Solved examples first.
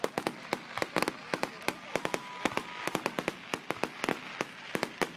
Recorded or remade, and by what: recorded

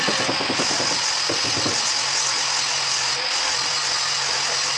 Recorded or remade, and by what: recorded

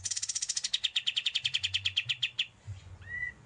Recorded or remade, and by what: remade, vocoder, Vocos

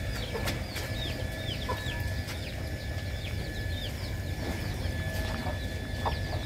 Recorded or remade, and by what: recorded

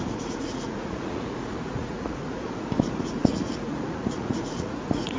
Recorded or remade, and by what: remade, vocoder, Vocos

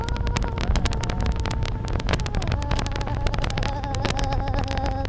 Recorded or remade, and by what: recorded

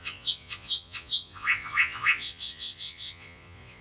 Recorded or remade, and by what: remade, vocoder, Vocos